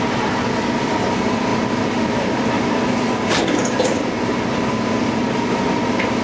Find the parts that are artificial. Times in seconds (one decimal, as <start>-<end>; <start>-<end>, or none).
none